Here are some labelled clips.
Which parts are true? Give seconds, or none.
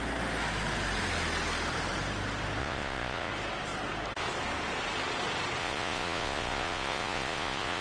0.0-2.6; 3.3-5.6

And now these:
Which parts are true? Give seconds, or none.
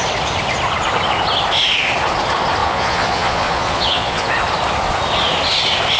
0.0-2.6; 4.3-6.0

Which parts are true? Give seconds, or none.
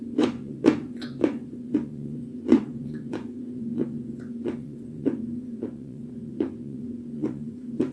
none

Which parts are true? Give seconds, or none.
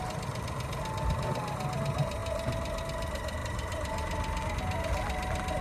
0.0-5.6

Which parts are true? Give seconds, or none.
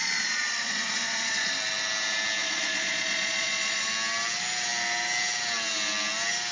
1.5-2.4; 3.9-6.5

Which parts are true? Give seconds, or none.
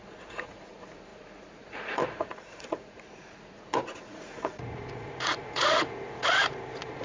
none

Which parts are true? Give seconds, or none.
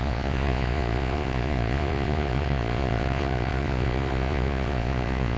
none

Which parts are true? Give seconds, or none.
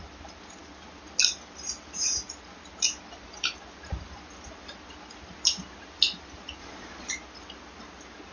0.0-6.6; 7.1-8.3